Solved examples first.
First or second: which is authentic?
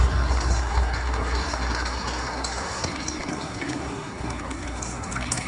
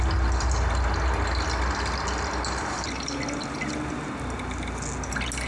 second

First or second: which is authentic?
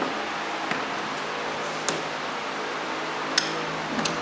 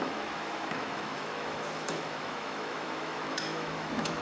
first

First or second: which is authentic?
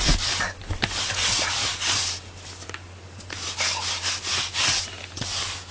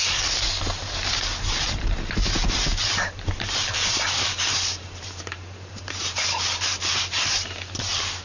first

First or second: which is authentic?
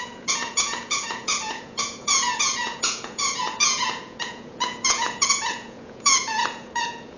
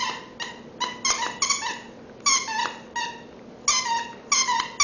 second